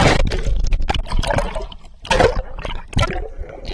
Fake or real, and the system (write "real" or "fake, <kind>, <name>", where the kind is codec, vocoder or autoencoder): real